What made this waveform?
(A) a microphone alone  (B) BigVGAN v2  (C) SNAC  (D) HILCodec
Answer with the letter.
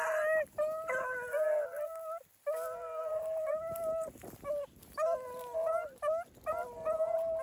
A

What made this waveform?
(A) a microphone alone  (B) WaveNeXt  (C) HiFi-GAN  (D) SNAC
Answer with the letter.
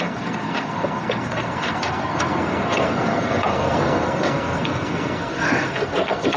D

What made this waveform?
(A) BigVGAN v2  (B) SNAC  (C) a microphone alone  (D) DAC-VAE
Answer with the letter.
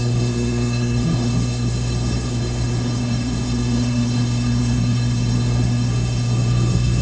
B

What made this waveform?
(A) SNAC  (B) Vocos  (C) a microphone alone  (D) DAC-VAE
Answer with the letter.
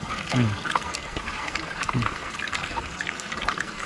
A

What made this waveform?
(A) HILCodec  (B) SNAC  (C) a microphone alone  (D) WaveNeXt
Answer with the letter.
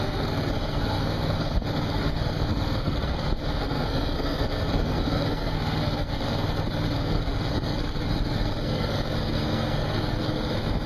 B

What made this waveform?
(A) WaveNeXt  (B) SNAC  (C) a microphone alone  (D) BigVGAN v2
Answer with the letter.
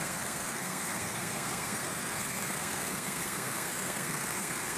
B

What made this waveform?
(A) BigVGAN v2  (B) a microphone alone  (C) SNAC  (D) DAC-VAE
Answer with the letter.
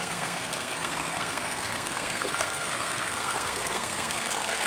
C